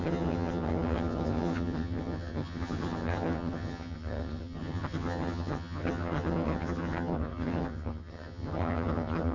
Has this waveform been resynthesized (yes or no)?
yes